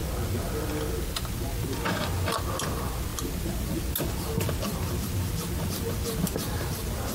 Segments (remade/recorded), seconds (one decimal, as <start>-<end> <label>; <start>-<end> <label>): 0.0-7.1 recorded